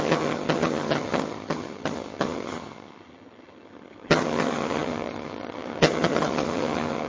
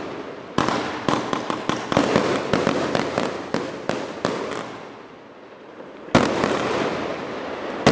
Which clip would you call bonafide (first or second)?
second